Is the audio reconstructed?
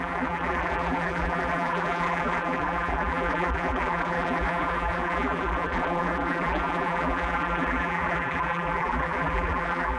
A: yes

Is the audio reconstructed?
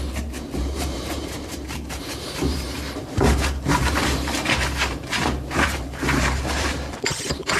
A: yes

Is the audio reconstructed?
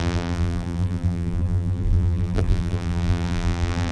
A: yes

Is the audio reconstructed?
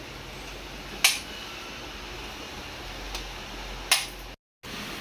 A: no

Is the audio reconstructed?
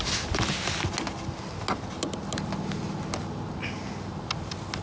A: no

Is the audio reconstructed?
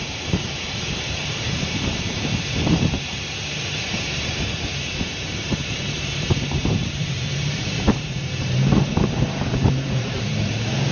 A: yes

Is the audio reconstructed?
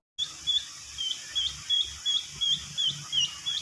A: no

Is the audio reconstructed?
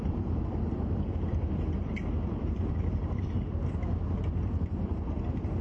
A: yes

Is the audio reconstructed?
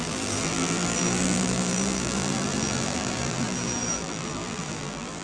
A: yes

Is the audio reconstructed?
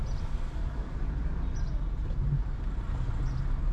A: no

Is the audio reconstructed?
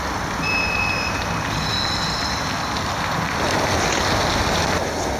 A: no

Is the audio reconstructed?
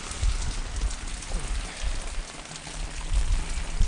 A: no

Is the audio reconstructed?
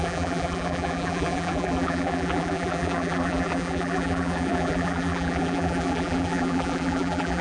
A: yes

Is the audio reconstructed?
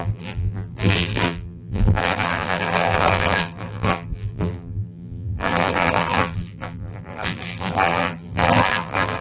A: yes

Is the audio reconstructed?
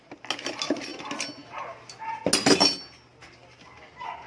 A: no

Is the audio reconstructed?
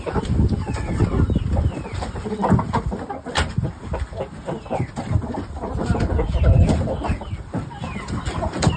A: yes